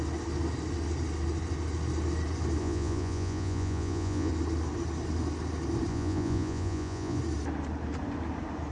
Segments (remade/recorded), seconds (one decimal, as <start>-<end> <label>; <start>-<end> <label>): 0.0-2.6 recorded; 2.6-4.3 remade; 4.3-5.9 recorded; 5.9-7.2 remade; 7.2-8.7 recorded